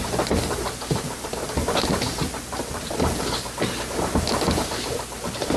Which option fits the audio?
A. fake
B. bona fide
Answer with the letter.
B